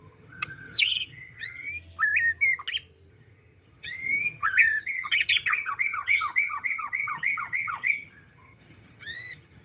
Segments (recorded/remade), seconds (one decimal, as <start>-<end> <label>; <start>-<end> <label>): 0.0-1.7 remade; 1.7-3.1 recorded; 3.1-9.6 remade